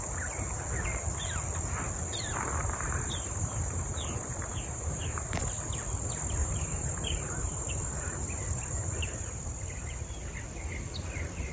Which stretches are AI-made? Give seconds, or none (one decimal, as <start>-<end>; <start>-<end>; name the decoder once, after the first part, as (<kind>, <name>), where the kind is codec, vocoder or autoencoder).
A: 2.6-5.4 (vocoder, BigVGAN v2); 6.4-10.0

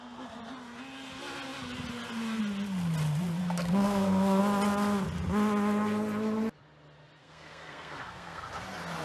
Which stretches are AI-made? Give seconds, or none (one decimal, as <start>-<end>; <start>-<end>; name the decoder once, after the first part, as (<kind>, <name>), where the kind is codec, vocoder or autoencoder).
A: 3.4-4.4 (codec, SNAC); 7.2-8.4

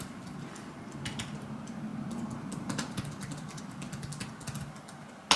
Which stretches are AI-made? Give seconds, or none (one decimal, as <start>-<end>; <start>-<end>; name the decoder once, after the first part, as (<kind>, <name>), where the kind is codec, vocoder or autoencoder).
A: none